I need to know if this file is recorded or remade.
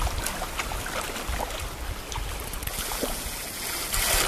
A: recorded